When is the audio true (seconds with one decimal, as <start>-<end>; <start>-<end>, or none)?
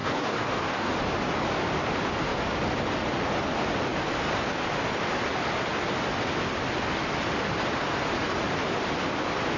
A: 0.9-9.6